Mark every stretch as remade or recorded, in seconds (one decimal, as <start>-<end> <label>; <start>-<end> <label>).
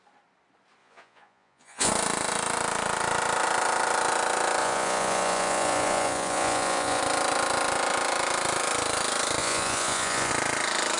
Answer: 0.0-0.8 recorded; 0.8-1.9 remade; 1.9-4.6 recorded; 4.6-7.0 remade; 7.0-9.4 recorded; 9.4-10.3 remade; 10.3-11.0 recorded